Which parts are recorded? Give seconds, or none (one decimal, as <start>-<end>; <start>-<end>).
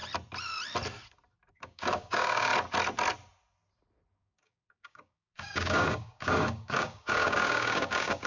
0.0-1.5; 2.5-4.1